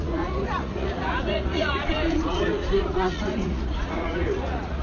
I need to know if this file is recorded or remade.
remade